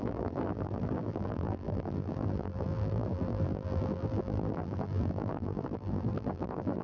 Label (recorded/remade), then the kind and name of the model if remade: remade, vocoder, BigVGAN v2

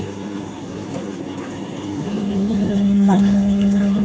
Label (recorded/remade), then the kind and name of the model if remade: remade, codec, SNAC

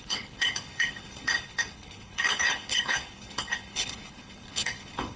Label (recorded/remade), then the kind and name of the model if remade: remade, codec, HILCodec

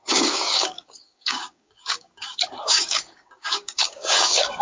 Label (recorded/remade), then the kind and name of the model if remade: remade, codec, DAC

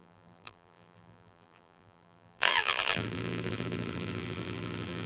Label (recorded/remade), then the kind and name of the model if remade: remade, vocoder, BigVGAN v2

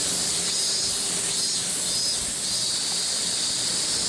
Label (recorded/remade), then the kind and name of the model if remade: recorded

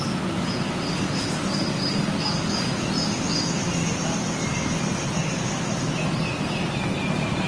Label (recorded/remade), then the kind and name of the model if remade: recorded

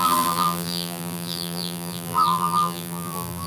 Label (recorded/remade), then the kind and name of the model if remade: remade, vocoder, BigVGAN v2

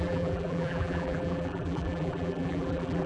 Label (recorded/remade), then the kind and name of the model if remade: remade, vocoder, BigVGAN v2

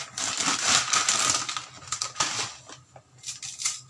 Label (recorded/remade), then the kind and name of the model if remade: recorded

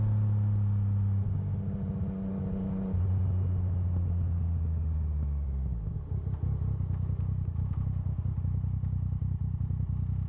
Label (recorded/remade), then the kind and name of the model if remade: recorded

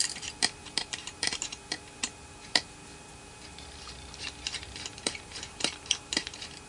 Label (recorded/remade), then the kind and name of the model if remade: remade, vocoder, BigVGAN v2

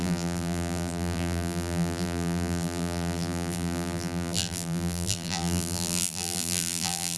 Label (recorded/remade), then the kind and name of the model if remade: remade, vocoder, BigVGAN v2